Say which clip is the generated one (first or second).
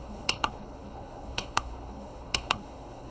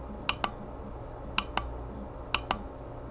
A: first